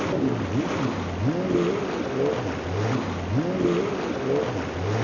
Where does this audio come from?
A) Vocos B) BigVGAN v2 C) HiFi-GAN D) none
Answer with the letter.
D